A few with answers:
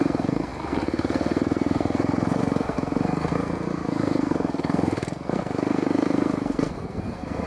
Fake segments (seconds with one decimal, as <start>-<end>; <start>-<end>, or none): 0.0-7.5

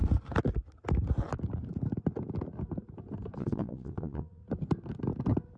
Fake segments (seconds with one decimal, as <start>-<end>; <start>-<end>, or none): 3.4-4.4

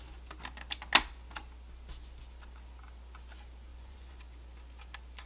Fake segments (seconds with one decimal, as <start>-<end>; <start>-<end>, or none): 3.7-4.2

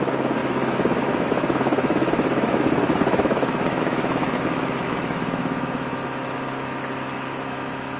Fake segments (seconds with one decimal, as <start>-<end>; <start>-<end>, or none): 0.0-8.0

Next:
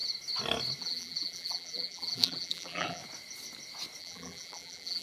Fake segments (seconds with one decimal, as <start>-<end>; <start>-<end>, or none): 0.8-3.0; 4.0-5.0

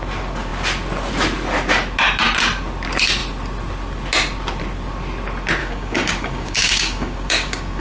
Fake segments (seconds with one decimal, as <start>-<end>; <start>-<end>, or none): 5.6-7.8

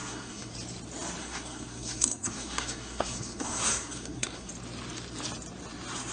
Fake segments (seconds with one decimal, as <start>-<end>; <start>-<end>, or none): 0.0-0.5; 1.2-4.5